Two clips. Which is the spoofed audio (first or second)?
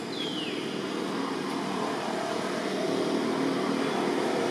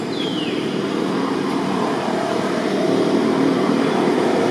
second